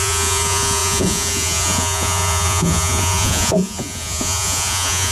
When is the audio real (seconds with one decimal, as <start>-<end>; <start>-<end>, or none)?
none